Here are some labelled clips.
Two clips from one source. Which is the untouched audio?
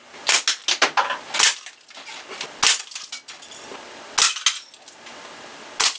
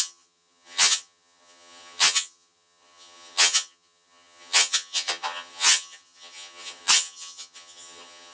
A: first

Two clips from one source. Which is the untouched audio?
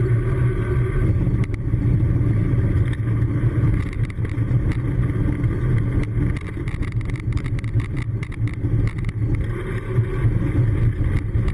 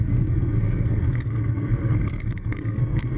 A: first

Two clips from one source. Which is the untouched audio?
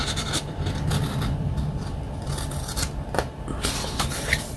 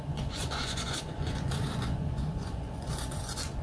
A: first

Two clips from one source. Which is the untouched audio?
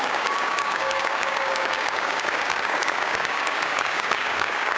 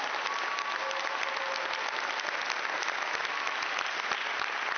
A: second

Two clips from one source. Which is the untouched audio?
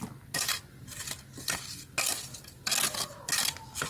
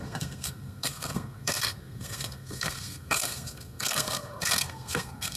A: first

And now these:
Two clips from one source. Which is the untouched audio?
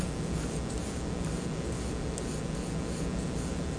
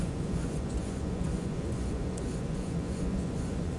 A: first